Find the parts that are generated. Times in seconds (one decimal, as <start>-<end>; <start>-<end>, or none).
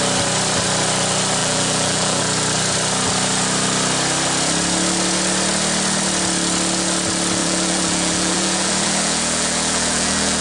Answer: 1.4-2.2; 7.4-10.4